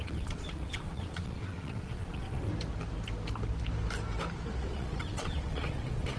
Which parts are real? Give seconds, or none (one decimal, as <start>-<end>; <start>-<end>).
2.5-4.6